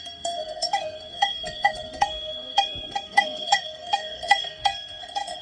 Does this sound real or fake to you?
fake